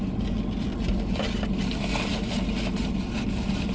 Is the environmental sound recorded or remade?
recorded